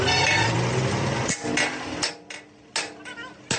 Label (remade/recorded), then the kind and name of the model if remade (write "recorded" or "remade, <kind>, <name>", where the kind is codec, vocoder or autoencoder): recorded